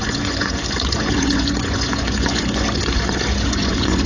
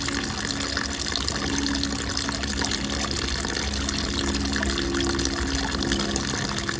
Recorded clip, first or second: second